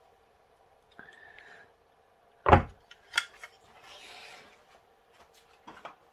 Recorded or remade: recorded